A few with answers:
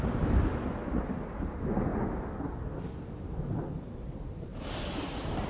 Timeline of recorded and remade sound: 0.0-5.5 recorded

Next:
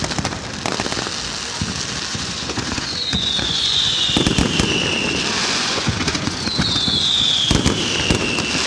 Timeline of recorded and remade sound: 0.0-2.1 recorded; 2.1-4.1 remade; 4.1-5.4 recorded; 5.4-7.5 remade; 7.5-8.7 recorded

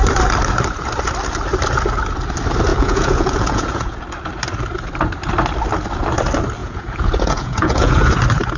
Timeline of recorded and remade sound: 0.0-2.7 recorded; 2.7-4.0 remade; 4.0-6.6 recorded; 6.6-8.1 remade; 8.1-8.6 recorded

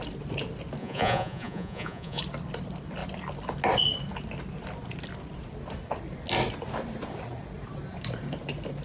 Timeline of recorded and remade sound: 0.0-0.8 recorded; 0.8-2.2 remade; 2.2-8.8 recorded